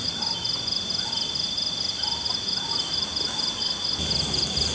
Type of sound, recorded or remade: recorded